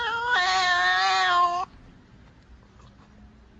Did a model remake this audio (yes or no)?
no